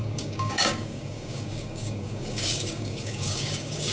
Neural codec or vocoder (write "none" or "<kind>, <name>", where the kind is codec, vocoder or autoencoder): codec, DAC